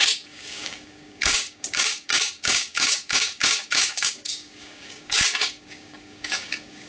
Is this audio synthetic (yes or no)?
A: yes